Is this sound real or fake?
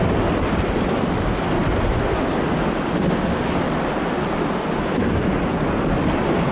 real